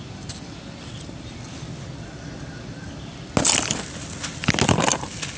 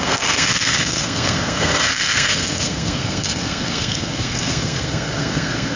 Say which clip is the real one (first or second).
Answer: first